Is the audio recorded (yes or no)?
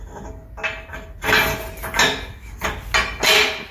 yes